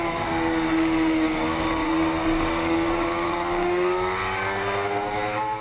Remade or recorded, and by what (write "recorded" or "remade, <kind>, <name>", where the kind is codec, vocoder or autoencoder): remade, codec, DAC